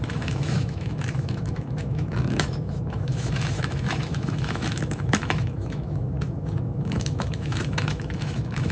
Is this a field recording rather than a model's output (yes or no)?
no